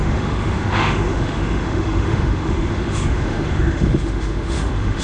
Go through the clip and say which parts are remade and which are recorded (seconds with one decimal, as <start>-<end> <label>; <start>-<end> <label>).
0.0-5.0 remade